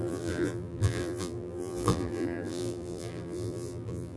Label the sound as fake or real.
fake